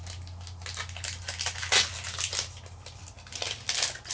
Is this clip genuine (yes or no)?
yes